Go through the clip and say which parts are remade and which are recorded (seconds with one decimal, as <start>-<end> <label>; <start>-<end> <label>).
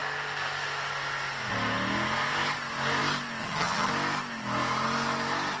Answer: 0.0-3.4 recorded; 3.4-3.9 remade; 3.9-5.6 recorded